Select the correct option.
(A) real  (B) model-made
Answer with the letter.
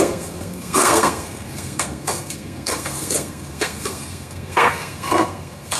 B